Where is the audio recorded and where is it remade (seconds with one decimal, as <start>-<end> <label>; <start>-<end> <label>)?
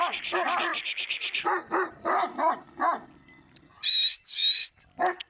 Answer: 0.0-4.4 recorded; 4.4-5.3 remade